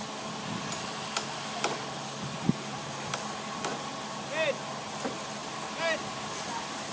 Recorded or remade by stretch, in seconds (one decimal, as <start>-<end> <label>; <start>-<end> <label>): 0.0-6.9 recorded